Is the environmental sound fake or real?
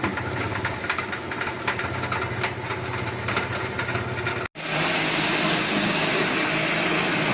real